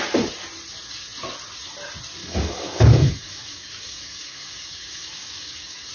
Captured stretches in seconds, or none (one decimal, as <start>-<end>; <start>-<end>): 0.0-2.2